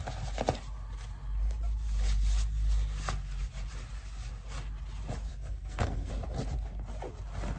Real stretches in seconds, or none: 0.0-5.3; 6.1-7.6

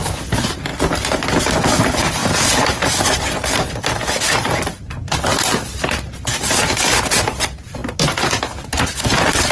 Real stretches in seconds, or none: 0.0-9.5

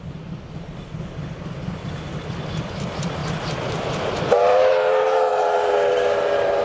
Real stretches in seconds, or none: 0.0-6.6

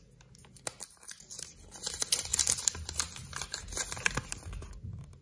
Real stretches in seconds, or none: 0.0-2.3; 4.3-5.2

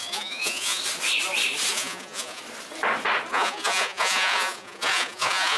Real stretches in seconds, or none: 0.8-1.7; 2.4-3.3

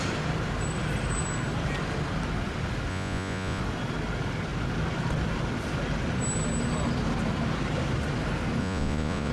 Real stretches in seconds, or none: 0.0-2.9; 3.6-8.6